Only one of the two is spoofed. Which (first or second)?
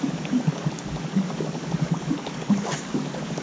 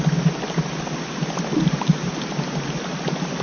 first